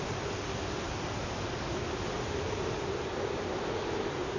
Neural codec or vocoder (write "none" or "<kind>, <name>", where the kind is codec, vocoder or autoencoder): none